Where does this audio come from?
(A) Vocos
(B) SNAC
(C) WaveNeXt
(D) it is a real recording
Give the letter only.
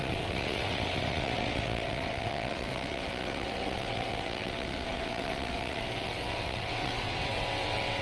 C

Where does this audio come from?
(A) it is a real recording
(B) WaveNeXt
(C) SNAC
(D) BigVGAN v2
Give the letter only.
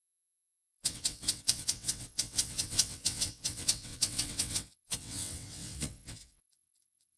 B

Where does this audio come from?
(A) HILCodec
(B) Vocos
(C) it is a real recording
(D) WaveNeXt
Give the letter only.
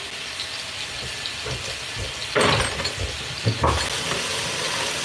C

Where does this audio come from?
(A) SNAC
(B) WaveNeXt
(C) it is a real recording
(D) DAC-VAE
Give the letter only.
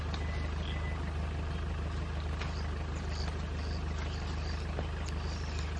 C